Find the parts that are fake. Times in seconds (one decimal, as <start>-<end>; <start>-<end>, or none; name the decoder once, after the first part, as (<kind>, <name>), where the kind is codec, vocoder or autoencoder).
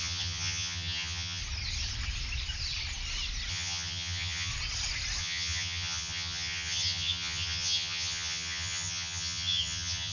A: 0.0-1.4 (vocoder, HiFi-GAN); 3.5-4.5; 5.2-10.1